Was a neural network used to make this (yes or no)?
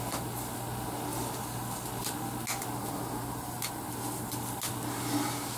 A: no